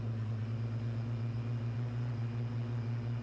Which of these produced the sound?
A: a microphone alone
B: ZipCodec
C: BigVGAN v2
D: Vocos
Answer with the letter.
A